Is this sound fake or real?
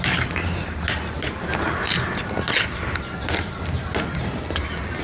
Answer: real